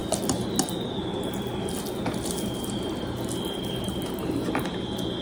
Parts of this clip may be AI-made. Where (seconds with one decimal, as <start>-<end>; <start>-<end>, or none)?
none